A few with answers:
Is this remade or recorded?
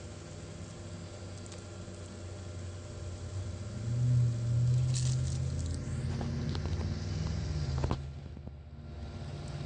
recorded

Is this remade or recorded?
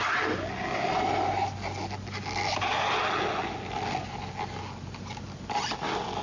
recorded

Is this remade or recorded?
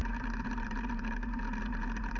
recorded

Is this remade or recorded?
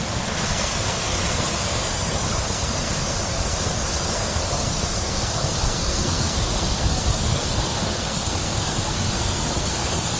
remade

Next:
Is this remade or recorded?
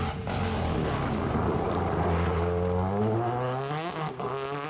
recorded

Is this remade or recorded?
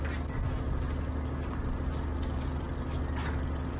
recorded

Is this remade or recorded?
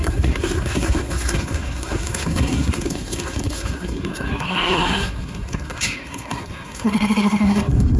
remade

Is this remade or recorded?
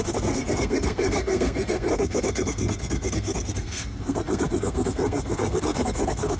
remade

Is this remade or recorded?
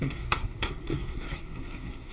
remade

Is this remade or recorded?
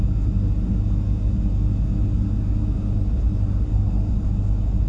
recorded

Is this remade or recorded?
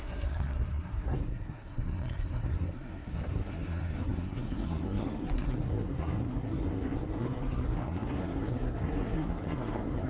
remade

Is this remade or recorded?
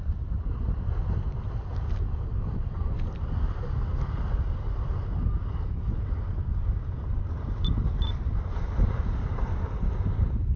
recorded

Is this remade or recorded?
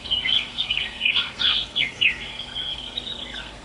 remade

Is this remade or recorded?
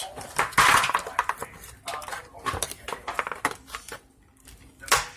recorded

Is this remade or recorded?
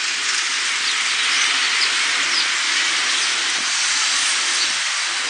recorded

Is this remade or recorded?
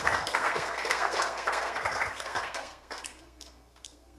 remade